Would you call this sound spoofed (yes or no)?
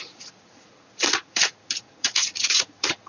yes